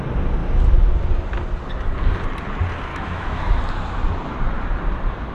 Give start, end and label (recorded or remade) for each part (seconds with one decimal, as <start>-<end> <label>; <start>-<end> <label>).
0.0-2.9 recorded; 2.9-3.6 remade; 3.6-5.3 recorded